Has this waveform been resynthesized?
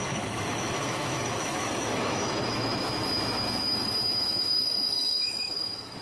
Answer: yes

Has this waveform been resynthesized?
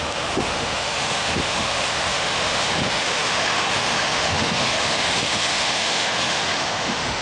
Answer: yes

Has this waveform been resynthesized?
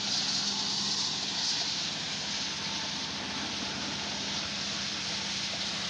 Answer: no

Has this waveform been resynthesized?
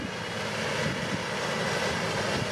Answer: no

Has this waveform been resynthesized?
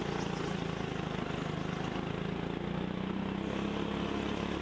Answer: no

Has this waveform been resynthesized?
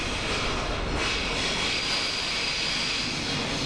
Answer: no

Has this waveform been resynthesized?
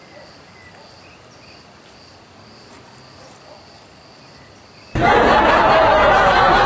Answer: no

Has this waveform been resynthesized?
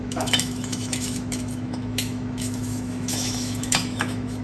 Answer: yes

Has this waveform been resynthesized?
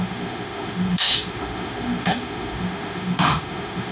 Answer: yes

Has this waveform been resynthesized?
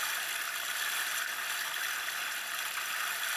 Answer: no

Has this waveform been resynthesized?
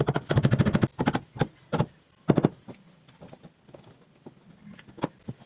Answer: no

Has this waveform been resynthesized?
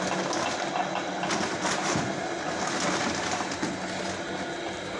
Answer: no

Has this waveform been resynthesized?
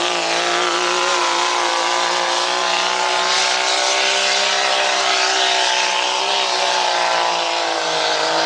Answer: no